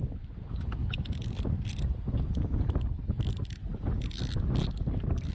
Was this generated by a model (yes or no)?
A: no